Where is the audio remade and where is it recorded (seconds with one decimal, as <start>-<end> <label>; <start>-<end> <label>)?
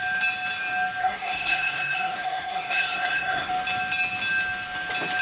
0.0-1.0 recorded; 1.0-3.5 remade; 3.5-5.2 recorded